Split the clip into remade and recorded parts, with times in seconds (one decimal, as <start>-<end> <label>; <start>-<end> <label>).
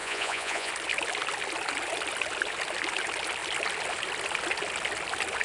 0.0-0.7 remade; 0.7-5.4 recorded